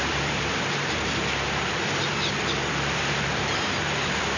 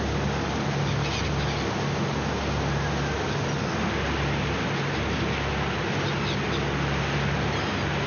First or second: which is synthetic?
first